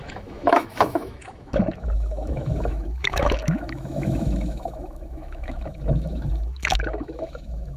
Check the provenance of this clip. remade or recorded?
remade